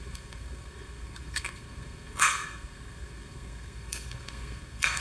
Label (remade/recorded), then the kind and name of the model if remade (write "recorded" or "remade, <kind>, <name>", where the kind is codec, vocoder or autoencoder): remade, codec, SNAC